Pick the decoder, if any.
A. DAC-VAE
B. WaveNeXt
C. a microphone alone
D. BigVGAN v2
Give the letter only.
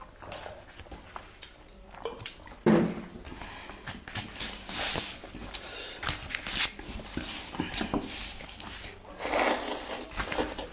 C